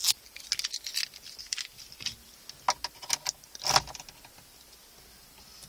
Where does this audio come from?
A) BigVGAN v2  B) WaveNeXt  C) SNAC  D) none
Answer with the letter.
D